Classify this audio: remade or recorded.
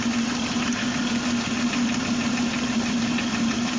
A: recorded